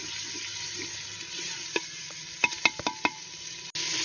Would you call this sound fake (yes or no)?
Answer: no